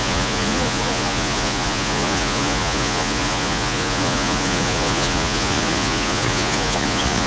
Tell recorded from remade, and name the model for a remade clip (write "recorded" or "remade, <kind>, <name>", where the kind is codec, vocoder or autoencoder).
remade, vocoder, Vocos